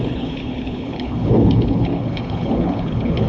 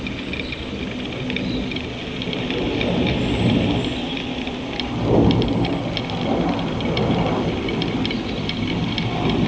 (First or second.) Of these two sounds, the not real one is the first